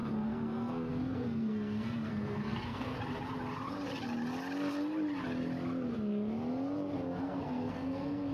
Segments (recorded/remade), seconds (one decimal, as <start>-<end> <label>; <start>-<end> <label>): 0.0-3.0 remade; 3.0-7.2 recorded; 7.2-8.3 remade

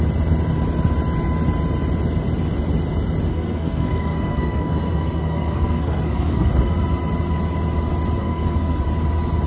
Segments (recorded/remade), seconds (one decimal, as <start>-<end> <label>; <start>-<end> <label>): 0.0-3.3 recorded; 3.3-6.5 remade; 6.5-8.2 recorded; 8.2-8.8 remade; 8.8-9.5 recorded